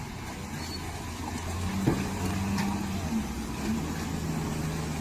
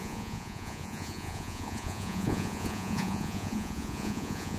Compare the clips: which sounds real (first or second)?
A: first